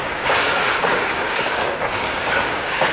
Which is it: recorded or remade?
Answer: remade